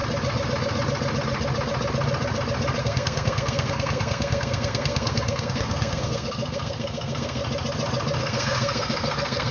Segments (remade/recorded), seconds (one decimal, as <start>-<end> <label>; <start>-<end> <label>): 0.0-2.8 recorded; 2.8-7.4 remade; 7.4-8.2 recorded; 8.2-9.5 remade